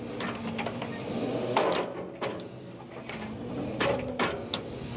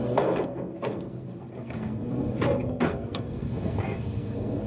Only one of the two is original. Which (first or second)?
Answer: first